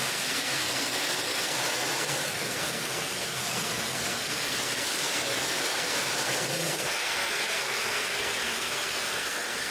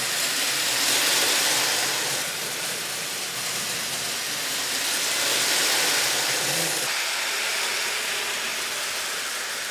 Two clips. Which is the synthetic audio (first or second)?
first